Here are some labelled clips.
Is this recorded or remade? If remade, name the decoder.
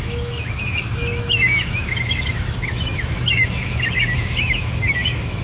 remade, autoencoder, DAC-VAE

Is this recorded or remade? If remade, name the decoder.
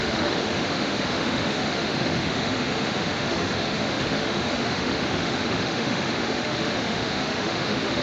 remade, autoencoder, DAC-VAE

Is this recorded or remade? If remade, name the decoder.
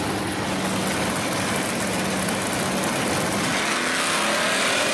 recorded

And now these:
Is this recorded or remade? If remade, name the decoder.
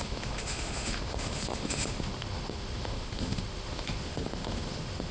remade, autoencoder, DAC-VAE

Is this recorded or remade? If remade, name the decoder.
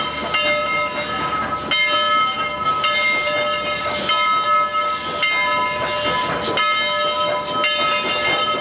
recorded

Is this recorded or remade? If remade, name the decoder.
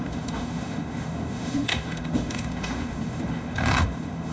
remade, autoencoder, DAC-VAE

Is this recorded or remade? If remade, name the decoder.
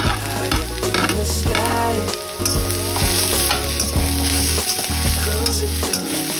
recorded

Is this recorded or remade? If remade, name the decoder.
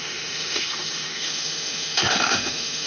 remade, autoencoder, DAC-VAE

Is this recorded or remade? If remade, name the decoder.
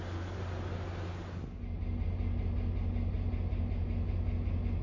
recorded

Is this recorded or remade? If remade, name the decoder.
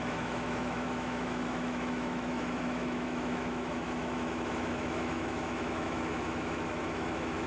remade, autoencoder, DAC-VAE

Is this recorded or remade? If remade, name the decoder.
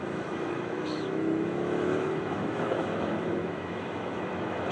remade, autoencoder, DAC-VAE